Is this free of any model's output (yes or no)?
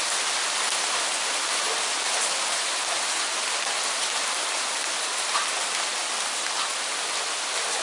yes